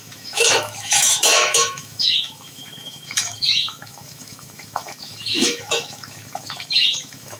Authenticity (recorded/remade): remade